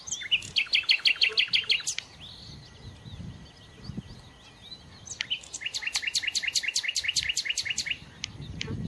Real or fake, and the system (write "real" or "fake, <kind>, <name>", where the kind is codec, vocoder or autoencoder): real